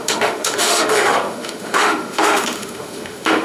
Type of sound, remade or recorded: remade